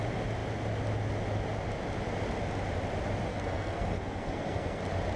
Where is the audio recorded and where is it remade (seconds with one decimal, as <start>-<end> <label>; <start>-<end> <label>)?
0.0-3.3 recorded; 3.3-4.8 remade; 4.8-5.2 recorded